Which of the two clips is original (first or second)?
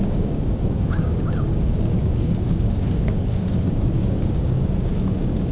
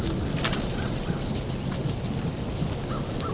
second